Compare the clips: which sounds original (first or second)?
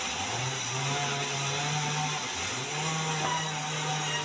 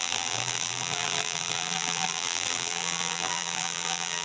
first